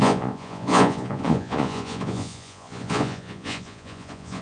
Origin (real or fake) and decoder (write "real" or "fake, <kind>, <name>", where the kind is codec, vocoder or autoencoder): fake, vocoder, Vocos